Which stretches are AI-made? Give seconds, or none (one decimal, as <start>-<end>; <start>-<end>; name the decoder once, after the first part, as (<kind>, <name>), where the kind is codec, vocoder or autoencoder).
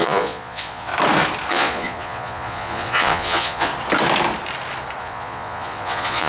0.0-0.9 (vocoder, Vocos); 1.5-3.7; 5.0-6.3